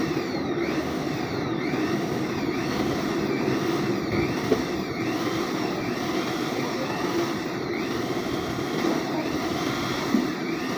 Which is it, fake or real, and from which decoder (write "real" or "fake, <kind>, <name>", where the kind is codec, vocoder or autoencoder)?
real